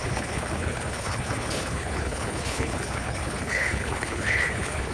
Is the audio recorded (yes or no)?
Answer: no